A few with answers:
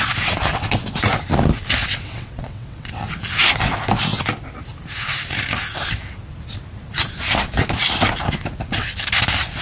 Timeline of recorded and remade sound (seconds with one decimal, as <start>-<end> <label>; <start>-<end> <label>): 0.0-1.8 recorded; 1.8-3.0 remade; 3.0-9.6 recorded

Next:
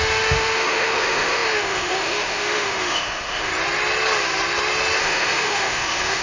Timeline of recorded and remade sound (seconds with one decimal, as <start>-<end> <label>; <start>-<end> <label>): 0.0-3.5 remade; 3.5-5.0 recorded; 5.0-6.2 remade

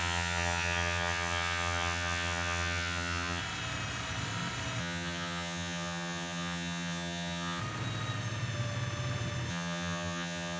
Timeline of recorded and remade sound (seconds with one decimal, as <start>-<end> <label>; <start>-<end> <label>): 0.0-3.4 remade; 3.4-4.8 recorded; 4.8-7.6 remade; 7.6-9.5 recorded; 9.5-10.6 remade

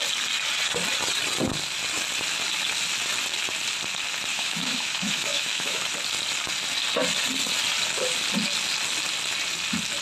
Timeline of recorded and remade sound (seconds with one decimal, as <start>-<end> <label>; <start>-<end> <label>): 0.0-4.3 recorded; 4.3-5.8 remade; 5.8-10.0 recorded

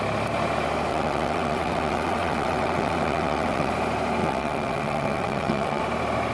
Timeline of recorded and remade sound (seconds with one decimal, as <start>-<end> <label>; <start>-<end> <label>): 0.0-0.9 recorded; 0.9-3.7 remade; 3.7-4.2 recorded; 4.2-5.8 remade; 5.8-6.3 recorded

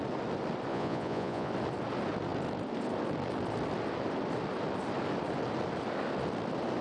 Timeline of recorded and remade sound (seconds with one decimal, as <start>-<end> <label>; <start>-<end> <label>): 0.0-0.7 recorded; 0.7-1.5 remade; 1.5-6.8 recorded